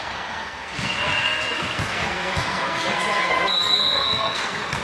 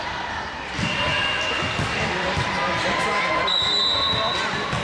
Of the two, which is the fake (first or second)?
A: first